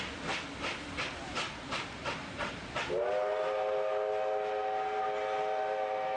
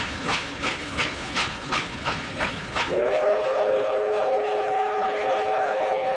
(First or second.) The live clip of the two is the first